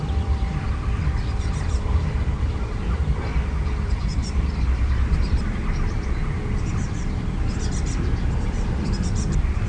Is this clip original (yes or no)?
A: no